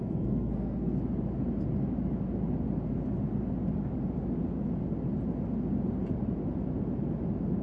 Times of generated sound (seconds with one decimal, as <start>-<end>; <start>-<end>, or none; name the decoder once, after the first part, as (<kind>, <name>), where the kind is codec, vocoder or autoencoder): 0.0-1.0 (codec, SNAC)